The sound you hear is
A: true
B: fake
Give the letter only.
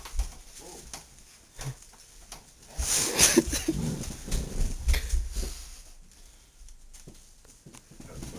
A